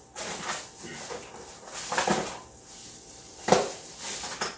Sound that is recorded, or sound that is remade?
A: recorded